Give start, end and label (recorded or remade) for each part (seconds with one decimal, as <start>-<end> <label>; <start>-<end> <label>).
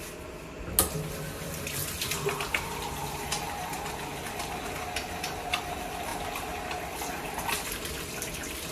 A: 0.0-8.7 recorded